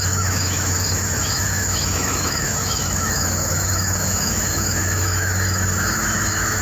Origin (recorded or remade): remade